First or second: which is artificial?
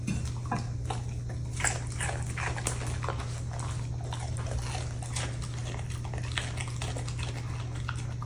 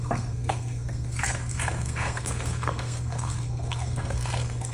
second